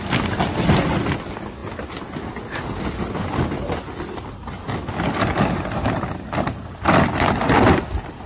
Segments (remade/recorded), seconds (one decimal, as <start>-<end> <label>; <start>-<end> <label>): 0.0-8.3 recorded